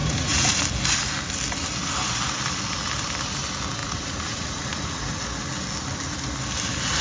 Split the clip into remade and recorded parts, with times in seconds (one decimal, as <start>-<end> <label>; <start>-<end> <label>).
0.0-0.6 remade; 0.6-3.8 recorded; 3.8-5.2 remade; 5.2-7.0 recorded